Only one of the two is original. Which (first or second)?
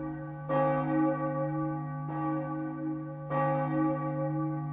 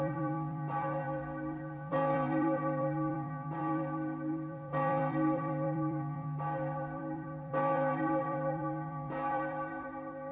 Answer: first